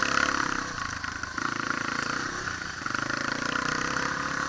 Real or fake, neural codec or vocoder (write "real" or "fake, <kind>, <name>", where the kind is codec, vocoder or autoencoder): real